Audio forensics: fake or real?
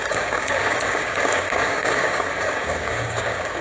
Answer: fake